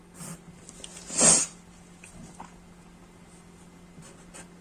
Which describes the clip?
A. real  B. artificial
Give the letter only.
A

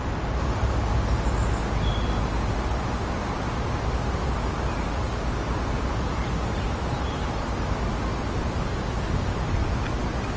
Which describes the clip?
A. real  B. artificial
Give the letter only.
A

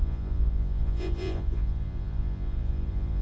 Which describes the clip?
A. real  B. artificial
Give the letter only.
B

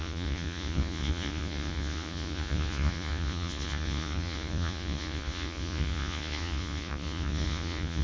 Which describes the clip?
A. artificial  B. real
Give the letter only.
A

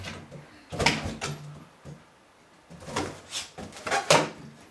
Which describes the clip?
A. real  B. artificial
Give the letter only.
A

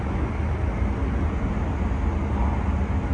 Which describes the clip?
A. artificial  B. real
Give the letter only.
B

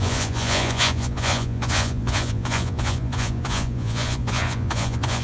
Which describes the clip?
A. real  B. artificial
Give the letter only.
B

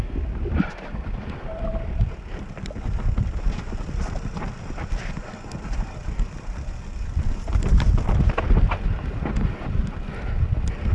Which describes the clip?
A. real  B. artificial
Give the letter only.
A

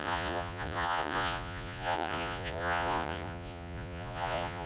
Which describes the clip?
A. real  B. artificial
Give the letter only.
B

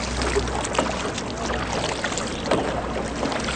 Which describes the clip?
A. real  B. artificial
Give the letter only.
A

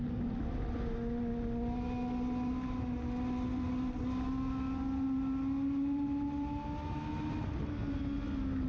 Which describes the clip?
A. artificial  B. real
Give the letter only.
B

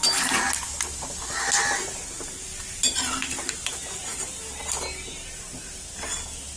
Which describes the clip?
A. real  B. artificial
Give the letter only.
A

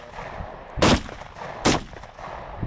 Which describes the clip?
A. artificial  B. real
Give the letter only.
B